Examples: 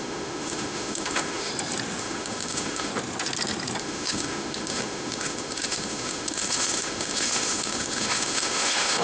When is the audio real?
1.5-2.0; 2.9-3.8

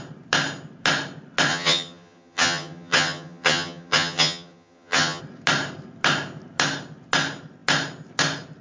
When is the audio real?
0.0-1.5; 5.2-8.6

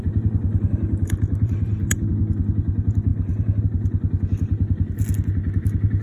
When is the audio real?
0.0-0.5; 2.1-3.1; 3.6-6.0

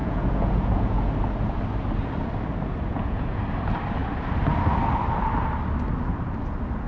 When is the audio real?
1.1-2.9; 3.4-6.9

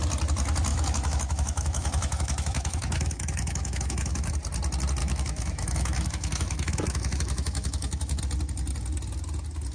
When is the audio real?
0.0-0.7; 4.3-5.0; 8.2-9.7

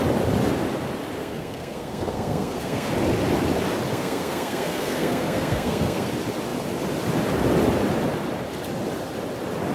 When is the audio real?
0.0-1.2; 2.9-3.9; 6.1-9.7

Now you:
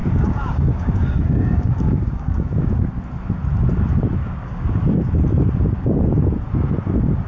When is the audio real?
2.7-4.2; 4.8-7.3

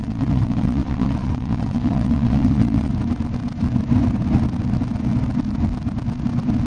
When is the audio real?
2.9-6.7